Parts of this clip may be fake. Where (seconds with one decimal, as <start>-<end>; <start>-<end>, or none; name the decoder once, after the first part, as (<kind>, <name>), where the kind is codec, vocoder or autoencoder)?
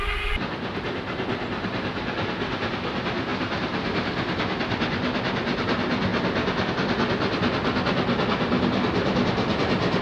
none